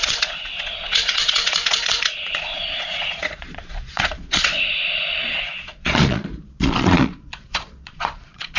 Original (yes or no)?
no